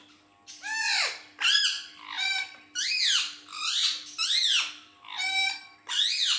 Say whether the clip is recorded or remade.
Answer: remade